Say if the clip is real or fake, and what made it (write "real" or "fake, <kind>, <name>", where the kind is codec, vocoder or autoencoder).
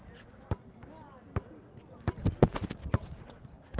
real